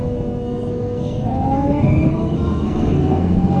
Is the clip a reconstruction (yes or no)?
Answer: yes